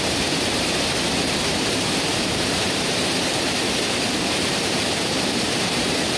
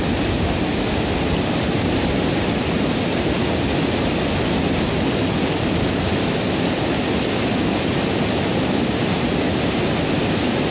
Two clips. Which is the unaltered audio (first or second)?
second